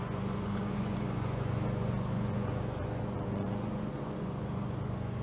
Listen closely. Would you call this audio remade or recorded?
remade